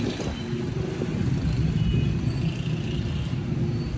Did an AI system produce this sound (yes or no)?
no